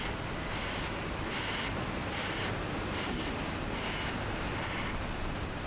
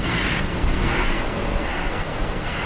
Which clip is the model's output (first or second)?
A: second